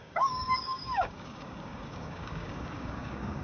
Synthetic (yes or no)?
yes